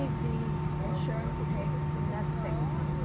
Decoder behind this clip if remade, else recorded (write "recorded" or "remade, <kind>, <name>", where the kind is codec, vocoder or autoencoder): recorded